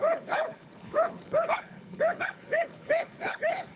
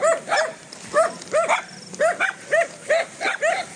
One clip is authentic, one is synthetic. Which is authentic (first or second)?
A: second